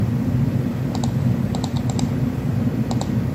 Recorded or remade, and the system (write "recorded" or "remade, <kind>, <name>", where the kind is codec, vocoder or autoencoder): recorded